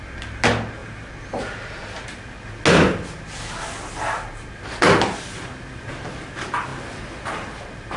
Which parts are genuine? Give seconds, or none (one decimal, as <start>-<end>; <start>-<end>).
0.0-8.0